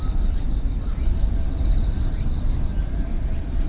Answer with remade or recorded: recorded